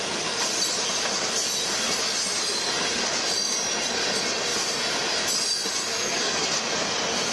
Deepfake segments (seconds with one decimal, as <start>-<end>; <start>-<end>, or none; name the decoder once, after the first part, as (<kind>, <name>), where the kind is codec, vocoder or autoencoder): 5.9-6.4 (codec, SNAC)